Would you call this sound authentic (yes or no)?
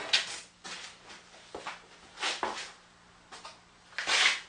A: yes